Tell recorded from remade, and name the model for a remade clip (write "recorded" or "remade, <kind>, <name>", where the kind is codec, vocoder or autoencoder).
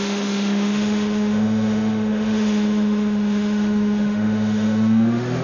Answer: remade, autoencoder, DAC-VAE